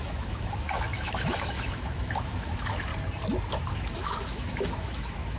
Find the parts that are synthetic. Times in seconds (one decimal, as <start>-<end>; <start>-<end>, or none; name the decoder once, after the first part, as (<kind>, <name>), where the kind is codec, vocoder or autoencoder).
0.0-2.9 (autoencoder, DAC-VAE); 3.5-5.4